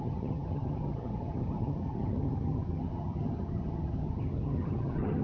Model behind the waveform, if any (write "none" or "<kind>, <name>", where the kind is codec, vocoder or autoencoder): vocoder, HiFi-GAN